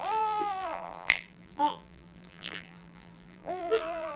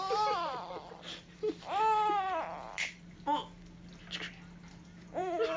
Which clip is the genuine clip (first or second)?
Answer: second